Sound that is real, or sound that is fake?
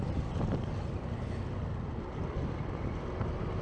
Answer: real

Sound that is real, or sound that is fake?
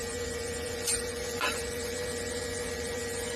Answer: fake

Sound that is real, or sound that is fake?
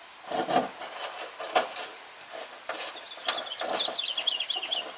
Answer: real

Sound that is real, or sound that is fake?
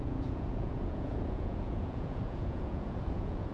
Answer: fake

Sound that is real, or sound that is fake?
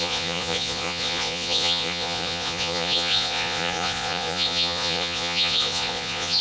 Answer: fake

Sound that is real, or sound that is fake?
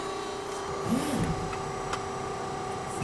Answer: real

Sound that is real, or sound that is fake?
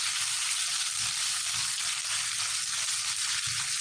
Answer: real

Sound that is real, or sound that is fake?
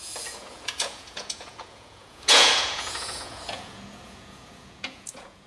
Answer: fake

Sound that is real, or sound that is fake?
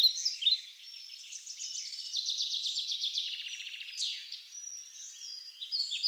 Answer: real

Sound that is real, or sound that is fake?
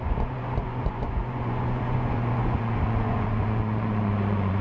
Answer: fake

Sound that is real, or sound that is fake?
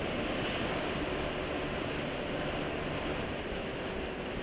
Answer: real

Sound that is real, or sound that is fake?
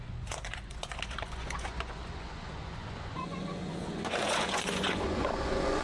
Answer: fake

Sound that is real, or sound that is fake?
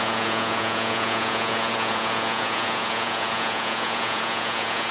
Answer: fake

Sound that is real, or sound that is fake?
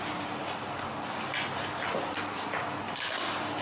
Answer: real